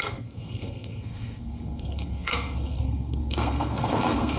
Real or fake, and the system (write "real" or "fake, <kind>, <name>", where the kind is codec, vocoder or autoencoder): fake, codec, SNAC